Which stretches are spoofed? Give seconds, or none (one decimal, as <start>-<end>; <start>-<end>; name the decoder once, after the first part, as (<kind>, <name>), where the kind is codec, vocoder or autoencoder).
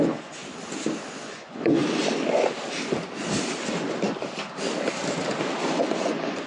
0.0-0.4 (vocoder, Vocos); 1.1-1.8; 5.6-6.5